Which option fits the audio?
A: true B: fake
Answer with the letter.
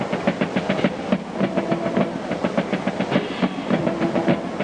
A